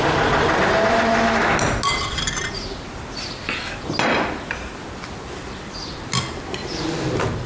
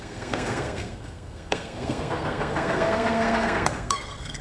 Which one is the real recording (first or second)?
first